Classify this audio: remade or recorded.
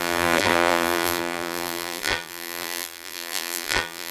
remade